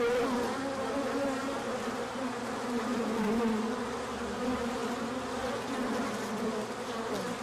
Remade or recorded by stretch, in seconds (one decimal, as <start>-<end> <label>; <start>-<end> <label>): 0.0-1.4 recorded; 1.4-3.9 remade; 3.9-7.4 recorded